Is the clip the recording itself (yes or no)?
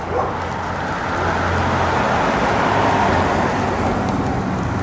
yes